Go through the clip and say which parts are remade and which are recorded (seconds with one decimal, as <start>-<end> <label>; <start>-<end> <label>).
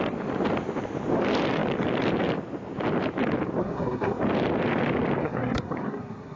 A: 0.0-3.6 recorded; 3.6-4.2 remade; 4.2-5.2 recorded; 5.2-6.4 remade